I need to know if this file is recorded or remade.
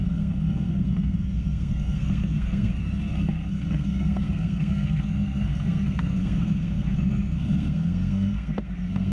remade